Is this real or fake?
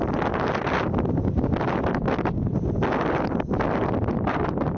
real